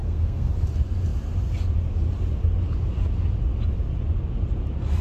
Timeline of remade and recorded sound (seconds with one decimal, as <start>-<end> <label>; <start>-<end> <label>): 0.0-0.5 remade; 0.5-5.0 recorded